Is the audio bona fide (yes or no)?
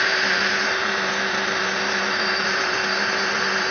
no